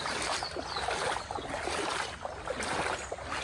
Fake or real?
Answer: real